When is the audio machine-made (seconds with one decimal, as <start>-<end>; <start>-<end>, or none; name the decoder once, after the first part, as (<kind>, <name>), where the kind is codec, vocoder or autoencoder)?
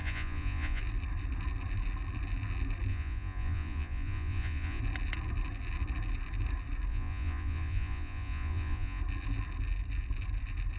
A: 0.0-0.8 (vocoder, Vocos); 2.9-4.8; 6.9-9.0